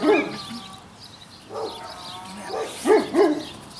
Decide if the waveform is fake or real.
real